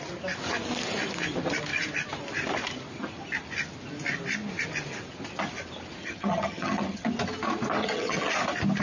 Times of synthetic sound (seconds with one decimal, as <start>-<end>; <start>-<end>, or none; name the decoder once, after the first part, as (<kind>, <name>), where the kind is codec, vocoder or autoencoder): 6.0-7.1 (vocoder, HiFi-GAN); 7.8-8.3